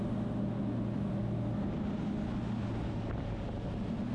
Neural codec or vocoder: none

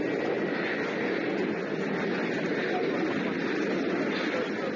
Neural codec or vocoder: none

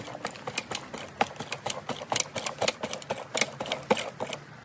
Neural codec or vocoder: none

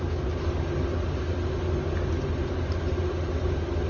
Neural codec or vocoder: none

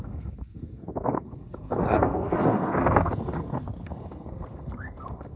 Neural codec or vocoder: codec, SNAC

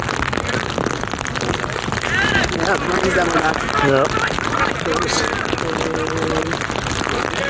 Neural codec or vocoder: none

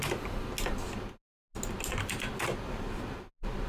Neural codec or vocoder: none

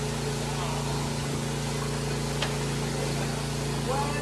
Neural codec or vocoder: none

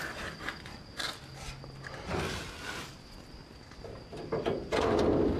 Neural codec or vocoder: none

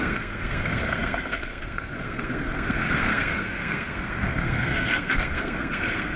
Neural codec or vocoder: codec, SNAC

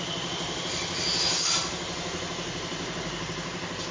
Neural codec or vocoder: none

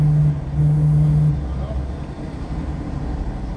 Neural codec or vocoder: none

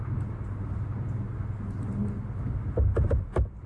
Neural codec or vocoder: none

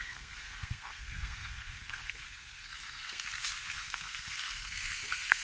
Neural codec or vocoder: codec, SNAC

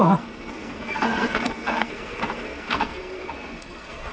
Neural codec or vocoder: codec, SNAC